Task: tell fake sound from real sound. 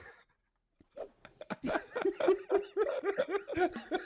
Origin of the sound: real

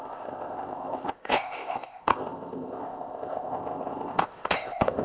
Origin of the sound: fake